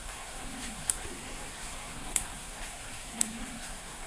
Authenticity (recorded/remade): remade